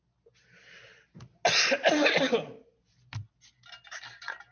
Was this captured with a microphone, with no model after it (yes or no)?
yes